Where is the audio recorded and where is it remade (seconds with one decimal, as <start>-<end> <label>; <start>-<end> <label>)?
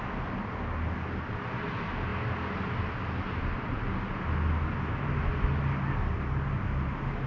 0.0-7.3 recorded